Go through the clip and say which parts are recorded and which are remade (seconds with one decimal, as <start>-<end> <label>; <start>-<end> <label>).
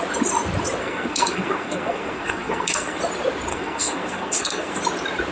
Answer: 0.0-0.8 recorded; 0.8-3.0 remade; 3.0-3.5 recorded; 3.5-4.8 remade; 4.8-5.3 recorded